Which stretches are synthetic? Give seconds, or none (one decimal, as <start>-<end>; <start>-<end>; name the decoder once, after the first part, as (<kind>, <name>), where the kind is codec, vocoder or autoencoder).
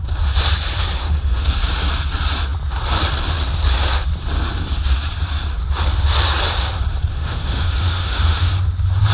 1.0-1.5 (autoencoder, DAC-VAE); 7.1-8.5